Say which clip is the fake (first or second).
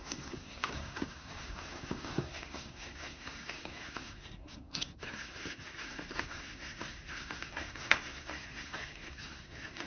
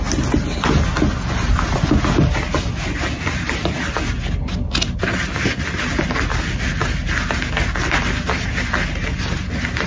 first